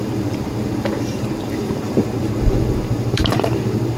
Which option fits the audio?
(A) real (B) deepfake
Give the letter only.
B